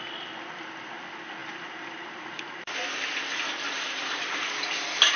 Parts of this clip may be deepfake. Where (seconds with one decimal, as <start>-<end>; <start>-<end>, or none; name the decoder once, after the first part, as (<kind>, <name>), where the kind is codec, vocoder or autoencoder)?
1.4-4.5 (vocoder, BigVGAN v2)